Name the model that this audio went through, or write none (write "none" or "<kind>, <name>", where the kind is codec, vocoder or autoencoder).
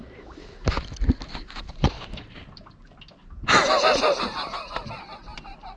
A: none